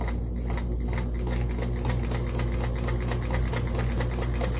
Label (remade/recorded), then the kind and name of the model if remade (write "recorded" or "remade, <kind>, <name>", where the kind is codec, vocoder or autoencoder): recorded